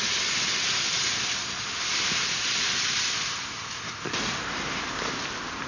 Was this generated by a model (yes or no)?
no